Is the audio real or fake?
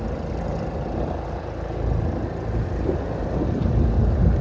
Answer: real